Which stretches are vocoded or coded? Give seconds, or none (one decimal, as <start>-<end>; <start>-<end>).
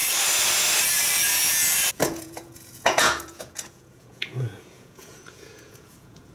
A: 1.9-6.3